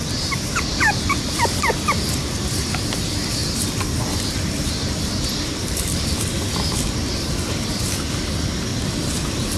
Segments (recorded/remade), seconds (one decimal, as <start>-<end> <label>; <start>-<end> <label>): 0.0-3.4 remade; 3.4-4.0 recorded; 4.0-4.8 remade; 4.8-5.4 recorded; 5.4-8.7 remade; 8.7-9.6 recorded